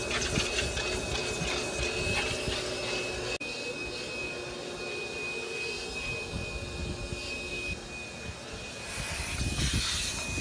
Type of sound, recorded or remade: recorded